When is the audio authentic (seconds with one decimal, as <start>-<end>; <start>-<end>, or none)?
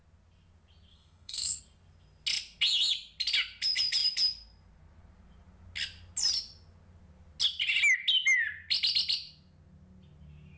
0.0-0.9; 1.6-10.6